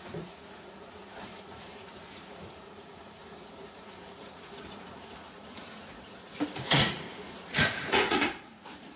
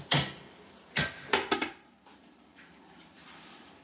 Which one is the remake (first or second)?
first